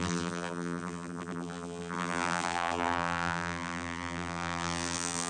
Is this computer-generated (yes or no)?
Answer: yes